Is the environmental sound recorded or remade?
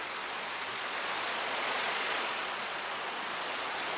remade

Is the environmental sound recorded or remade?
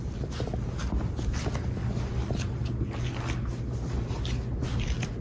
recorded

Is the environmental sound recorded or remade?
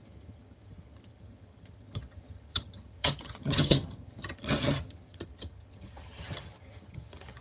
remade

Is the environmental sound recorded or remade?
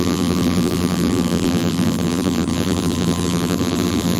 remade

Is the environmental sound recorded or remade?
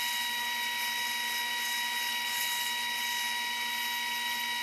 recorded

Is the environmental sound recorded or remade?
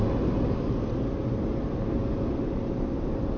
recorded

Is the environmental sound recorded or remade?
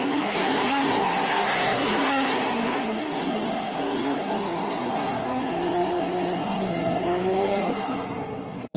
remade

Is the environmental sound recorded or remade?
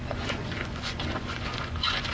remade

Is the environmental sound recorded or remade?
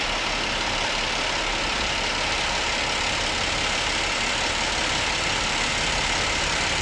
recorded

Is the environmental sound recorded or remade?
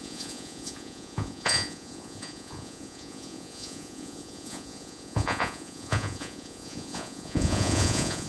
remade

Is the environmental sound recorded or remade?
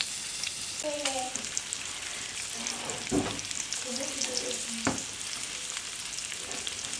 recorded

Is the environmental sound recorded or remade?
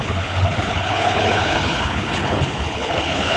remade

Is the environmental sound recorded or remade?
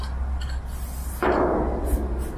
recorded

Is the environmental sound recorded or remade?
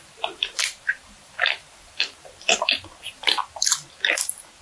remade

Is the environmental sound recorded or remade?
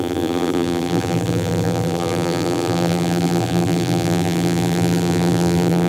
remade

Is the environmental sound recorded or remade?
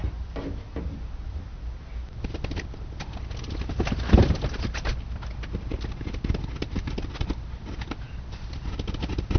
recorded